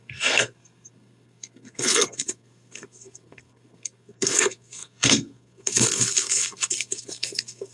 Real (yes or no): no